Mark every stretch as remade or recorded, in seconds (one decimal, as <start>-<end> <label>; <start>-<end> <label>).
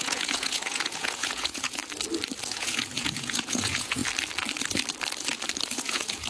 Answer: 0.0-1.8 remade; 1.8-2.4 recorded; 2.4-4.0 remade; 4.0-5.7 recorded; 5.7-6.3 remade